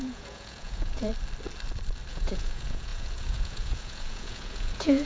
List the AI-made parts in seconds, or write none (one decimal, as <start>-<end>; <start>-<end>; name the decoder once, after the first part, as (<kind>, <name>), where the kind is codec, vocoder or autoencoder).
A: 0.0-1.1 (vocoder, Vocos); 2.1-5.1